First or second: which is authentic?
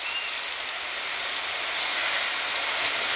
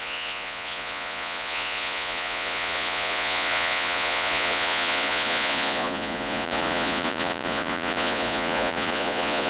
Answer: first